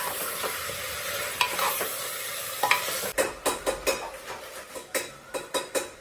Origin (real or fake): real